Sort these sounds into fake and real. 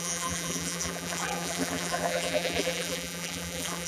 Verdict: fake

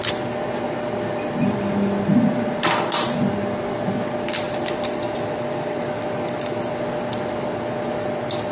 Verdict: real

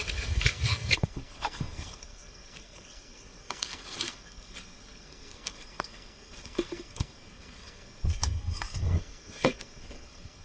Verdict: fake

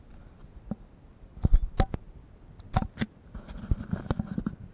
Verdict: real